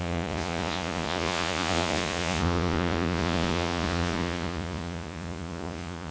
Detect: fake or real fake